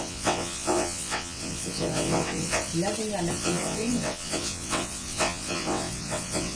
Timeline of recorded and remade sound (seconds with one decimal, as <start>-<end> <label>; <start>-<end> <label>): 0.0-2.7 remade; 2.7-3.3 recorded; 3.3-6.6 remade